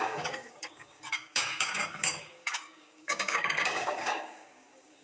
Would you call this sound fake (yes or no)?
yes